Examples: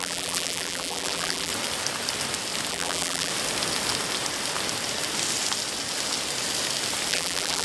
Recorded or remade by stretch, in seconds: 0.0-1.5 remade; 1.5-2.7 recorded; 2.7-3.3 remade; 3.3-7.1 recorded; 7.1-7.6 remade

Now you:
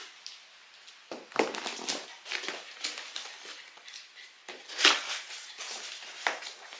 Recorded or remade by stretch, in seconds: 0.0-6.8 recorded

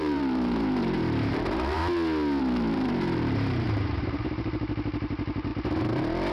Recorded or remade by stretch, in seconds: 0.0-1.8 remade; 1.8-2.4 recorded; 2.4-5.5 remade; 5.5-6.3 recorded